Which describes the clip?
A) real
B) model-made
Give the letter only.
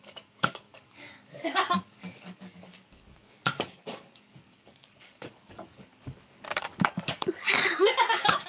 B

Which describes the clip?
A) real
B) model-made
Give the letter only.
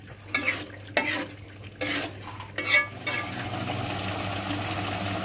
A